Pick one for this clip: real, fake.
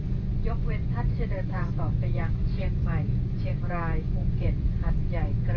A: fake